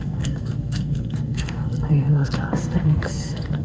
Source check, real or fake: fake